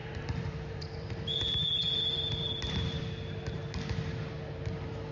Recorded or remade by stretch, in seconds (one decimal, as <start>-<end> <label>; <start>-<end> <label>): 0.0-3.1 remade; 3.1-5.1 recorded